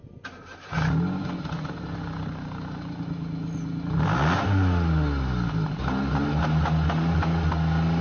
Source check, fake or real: real